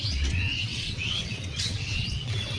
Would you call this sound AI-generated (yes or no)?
yes